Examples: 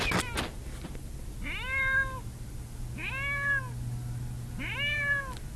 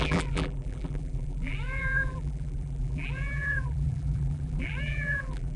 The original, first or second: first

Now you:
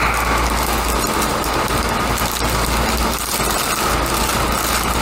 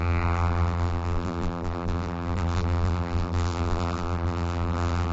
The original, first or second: first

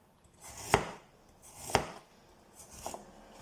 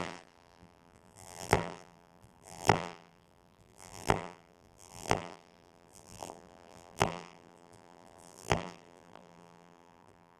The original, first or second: first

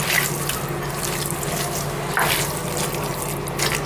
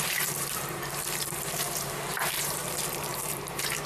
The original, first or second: first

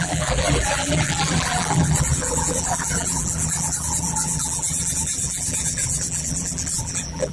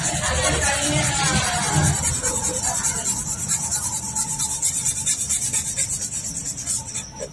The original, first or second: second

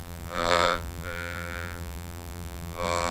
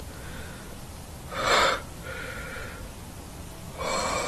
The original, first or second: second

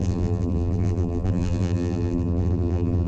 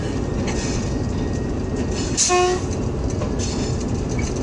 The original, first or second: second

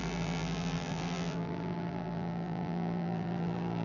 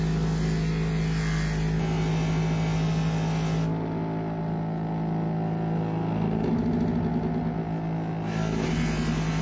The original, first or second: second